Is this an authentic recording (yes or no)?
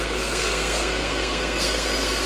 no